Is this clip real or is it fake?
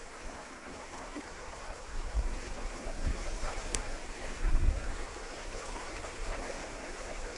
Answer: fake